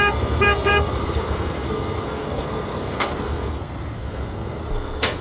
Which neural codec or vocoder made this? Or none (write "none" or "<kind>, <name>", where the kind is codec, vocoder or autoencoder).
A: codec, SNAC